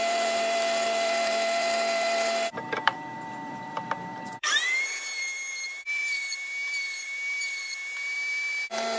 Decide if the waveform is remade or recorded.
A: remade